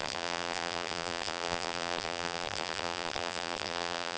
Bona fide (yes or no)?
no